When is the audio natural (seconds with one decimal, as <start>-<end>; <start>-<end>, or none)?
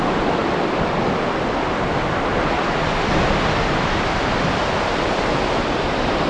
0.0-6.3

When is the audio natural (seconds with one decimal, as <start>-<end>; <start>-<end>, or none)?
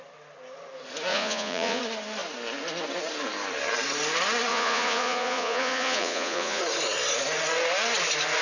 0.0-1.1; 1.8-4.5; 6.6-8.4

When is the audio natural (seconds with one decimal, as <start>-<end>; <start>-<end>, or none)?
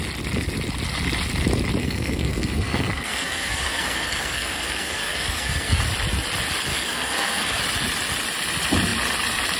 0.0-1.8; 5.8-6.7; 7.6-9.6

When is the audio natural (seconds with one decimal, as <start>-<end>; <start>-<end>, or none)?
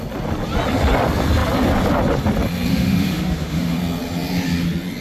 0.0-2.7; 3.8-5.0